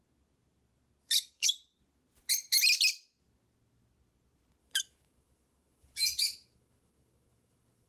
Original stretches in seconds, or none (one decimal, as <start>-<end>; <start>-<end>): 0.0-1.0; 1.5-4.6